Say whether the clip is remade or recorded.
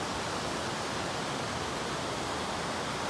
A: recorded